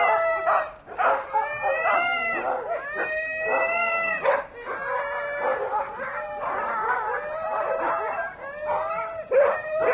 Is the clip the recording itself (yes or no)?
yes